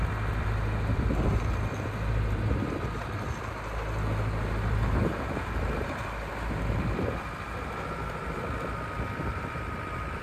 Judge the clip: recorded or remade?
remade